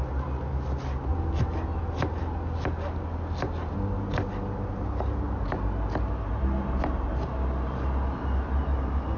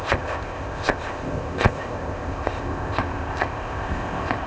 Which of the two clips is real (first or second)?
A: first